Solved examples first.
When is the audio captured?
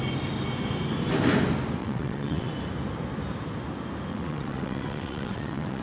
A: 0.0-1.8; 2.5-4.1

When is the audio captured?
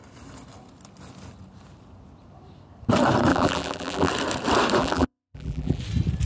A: 0.0-3.3; 4.1-4.8; 5.8-6.3